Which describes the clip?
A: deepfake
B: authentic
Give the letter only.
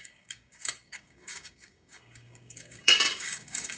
A